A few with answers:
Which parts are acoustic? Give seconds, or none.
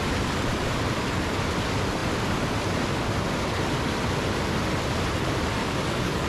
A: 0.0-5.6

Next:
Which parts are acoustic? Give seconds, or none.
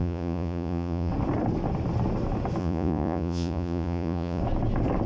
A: 1.1-2.6; 4.4-5.1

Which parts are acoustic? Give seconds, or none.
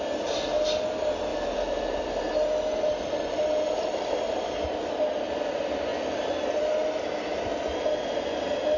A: 0.0-1.3; 4.9-8.8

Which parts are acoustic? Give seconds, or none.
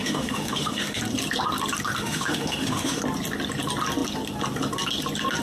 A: 1.0-2.0; 3.0-5.4